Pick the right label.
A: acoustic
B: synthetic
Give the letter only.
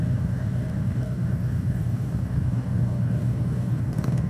B